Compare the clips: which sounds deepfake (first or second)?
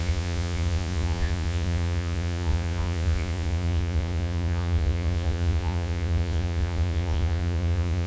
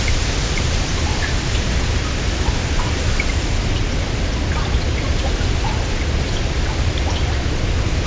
first